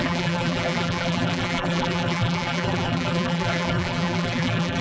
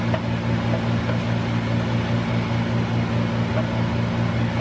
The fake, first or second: first